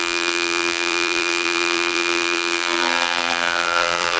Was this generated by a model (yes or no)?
yes